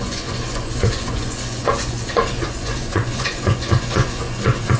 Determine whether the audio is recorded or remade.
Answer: remade